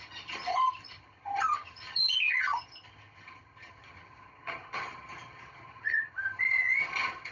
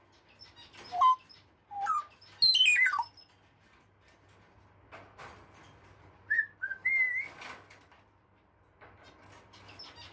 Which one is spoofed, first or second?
first